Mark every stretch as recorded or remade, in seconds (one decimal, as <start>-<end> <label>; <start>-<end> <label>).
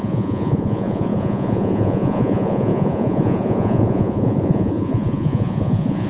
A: 0.0-6.1 remade